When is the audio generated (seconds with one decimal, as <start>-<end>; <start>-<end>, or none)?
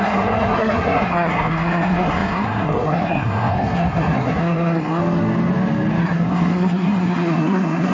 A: 0.0-5.0; 6.0-7.9